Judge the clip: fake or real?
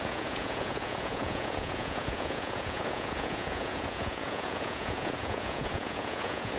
fake